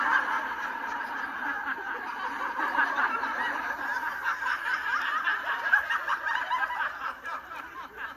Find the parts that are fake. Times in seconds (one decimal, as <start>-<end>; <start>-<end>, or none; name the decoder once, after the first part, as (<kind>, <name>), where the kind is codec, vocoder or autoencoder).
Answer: 0.0-8.2 (vocoder, BigVGAN v2)